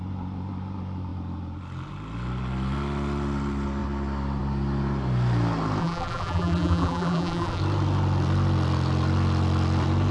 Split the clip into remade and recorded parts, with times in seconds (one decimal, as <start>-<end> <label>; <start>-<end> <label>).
0.0-5.8 recorded; 5.8-7.6 remade; 7.6-10.1 recorded